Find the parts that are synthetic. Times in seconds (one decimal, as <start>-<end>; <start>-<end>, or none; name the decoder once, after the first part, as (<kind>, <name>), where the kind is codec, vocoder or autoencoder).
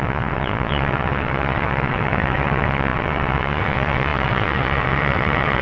0.0-5.6 (vocoder, WaveNeXt)